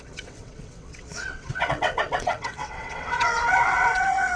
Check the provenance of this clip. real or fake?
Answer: fake